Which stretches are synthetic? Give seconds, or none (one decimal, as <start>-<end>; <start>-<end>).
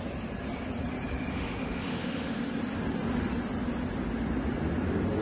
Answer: 1.3-2.3